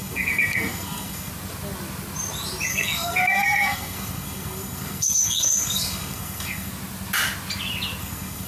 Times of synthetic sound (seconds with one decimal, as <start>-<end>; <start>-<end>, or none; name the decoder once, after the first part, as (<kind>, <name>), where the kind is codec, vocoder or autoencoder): 0.0-1.3 (codec, SNAC); 2.7-6.7; 8.0-8.5